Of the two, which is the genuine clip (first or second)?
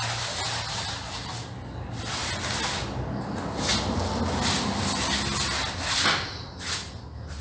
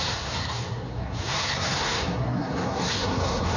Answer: first